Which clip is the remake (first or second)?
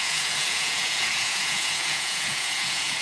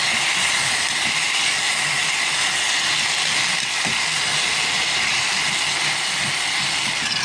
first